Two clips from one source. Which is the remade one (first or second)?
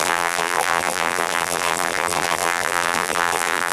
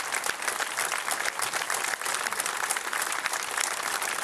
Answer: first